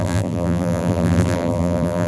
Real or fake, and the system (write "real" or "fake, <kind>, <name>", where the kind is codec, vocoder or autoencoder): fake, vocoder, BigVGAN v2